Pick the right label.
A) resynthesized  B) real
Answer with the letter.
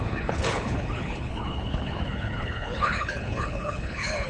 A